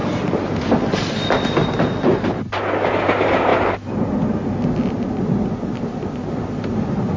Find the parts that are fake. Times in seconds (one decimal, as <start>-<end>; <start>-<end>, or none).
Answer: none